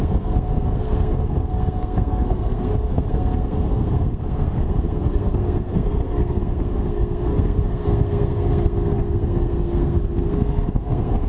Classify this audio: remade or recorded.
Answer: remade